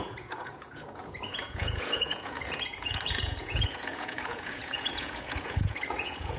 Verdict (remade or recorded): remade